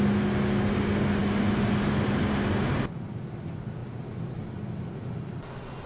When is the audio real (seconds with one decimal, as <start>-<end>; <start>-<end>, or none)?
0.0-5.9